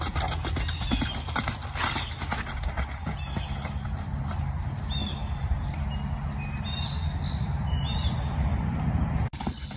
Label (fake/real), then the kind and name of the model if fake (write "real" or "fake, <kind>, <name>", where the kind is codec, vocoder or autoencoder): real